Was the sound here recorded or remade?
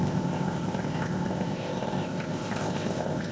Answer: remade